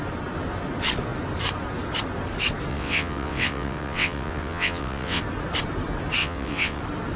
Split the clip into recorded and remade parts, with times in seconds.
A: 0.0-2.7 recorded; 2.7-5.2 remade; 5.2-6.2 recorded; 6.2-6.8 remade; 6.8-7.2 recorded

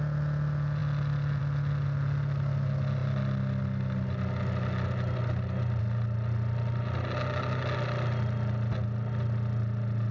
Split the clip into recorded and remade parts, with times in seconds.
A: 0.0-10.1 recorded

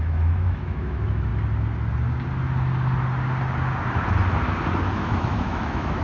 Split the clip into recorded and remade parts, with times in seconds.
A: 0.0-1.3 remade; 1.3-4.9 recorded; 4.9-6.0 remade

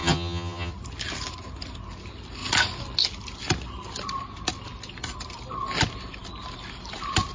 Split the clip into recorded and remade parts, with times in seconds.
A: 0.0-0.7 remade; 0.7-7.3 recorded

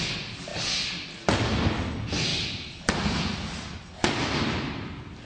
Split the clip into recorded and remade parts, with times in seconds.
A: 0.0-5.3 recorded

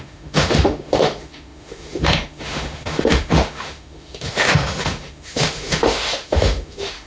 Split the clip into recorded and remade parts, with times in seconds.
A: 0.0-7.1 remade